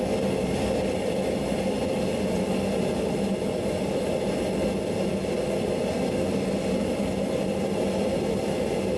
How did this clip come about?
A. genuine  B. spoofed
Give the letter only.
A